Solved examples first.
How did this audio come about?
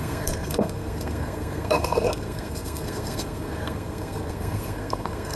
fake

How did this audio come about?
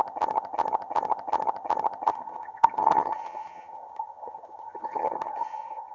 fake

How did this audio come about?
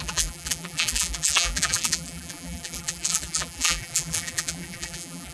fake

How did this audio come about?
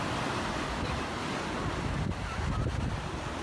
real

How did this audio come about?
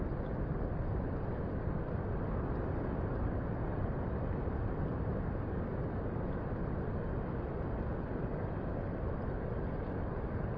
real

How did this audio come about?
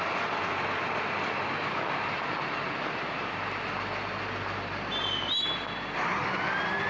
real